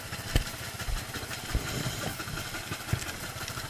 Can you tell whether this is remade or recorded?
recorded